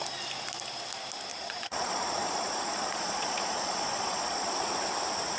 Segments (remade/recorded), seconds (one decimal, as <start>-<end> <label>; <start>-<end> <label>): 0.0-1.3 recorded; 1.3-4.5 remade; 4.5-5.4 recorded